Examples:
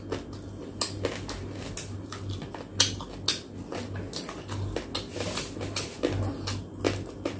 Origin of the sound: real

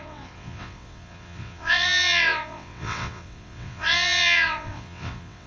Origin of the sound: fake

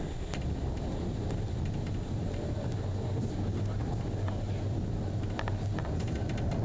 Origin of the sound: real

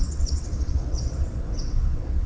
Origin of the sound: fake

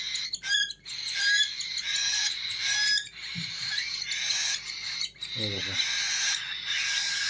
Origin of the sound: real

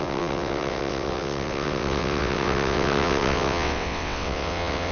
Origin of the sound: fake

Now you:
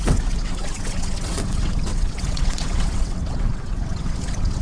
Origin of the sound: fake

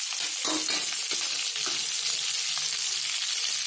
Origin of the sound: real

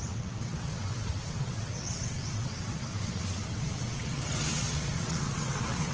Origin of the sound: fake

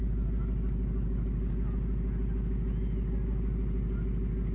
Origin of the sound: real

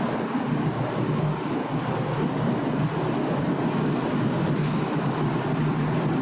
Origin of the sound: real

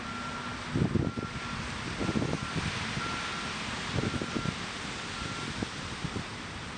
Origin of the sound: real